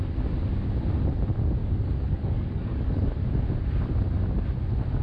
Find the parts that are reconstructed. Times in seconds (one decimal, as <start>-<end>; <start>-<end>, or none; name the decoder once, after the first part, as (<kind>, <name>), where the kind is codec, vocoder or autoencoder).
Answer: 1.6-3.2 (codec, DAC)